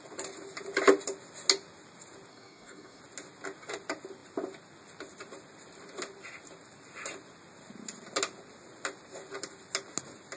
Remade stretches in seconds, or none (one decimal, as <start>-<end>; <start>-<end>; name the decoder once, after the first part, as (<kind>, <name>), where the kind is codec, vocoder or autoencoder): 2.3-3.0 (codec, DAC)